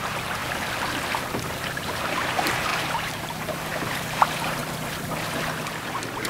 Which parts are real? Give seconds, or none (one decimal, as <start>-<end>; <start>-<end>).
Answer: 0.4-1.5; 4.6-6.3